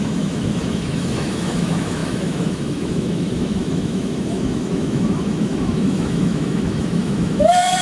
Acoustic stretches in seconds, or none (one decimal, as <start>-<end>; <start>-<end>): none